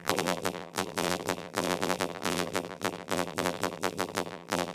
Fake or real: fake